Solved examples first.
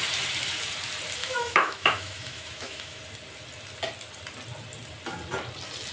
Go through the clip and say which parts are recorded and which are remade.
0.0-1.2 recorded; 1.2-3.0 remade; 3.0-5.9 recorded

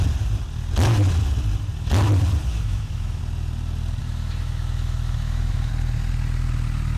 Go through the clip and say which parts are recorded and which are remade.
0.0-2.5 recorded; 2.5-3.2 remade; 3.2-4.0 recorded; 4.0-5.7 remade; 5.7-7.0 recorded

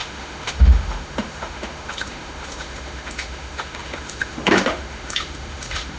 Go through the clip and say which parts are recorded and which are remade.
0.0-6.0 remade

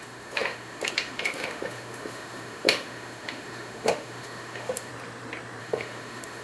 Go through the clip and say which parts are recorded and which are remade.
0.0-4.9 remade; 4.9-5.6 recorded; 5.6-6.4 remade

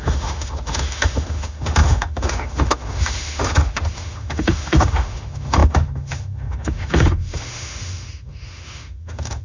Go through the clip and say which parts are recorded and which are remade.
0.0-9.4 remade

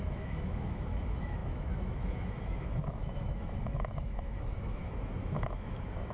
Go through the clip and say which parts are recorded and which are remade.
0.0-6.1 remade

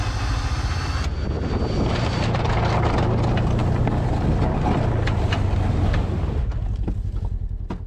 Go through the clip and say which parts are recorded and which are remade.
0.0-7.9 recorded